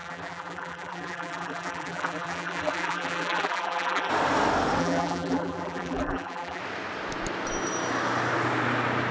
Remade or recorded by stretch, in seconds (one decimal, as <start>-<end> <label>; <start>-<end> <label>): 0.0-4.1 remade; 4.1-4.8 recorded; 4.8-6.6 remade; 6.6-9.1 recorded